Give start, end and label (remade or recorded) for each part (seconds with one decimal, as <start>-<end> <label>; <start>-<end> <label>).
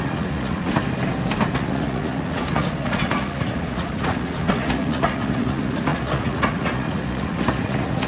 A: 0.0-0.8 remade; 0.8-1.5 recorded; 1.5-8.1 remade